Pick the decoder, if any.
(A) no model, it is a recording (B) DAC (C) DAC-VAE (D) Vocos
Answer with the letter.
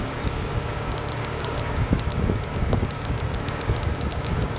B